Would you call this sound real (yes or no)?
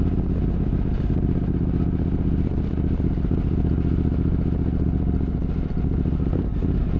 yes